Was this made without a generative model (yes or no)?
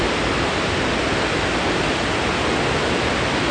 yes